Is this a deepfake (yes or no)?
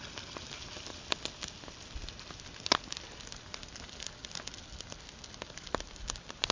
no